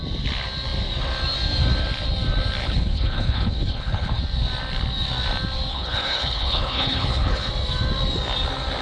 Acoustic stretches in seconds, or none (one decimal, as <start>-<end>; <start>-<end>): 0.0-2.6; 4.2-5.7; 7.5-8.8